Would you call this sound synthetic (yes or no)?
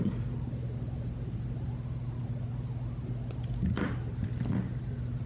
no